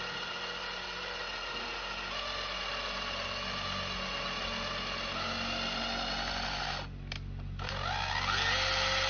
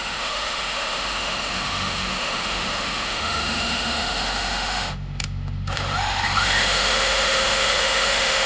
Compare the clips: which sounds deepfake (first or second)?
second